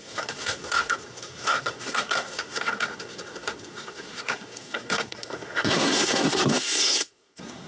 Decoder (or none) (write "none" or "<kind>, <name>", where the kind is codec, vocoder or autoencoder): codec, SNAC